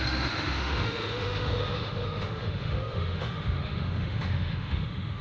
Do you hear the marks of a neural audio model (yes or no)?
yes